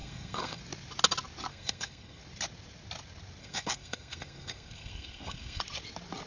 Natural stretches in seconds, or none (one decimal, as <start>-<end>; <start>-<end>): 0.6-1.5; 2.2-3.4; 5.6-6.3